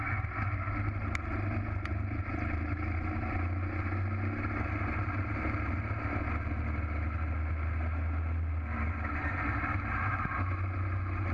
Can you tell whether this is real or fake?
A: real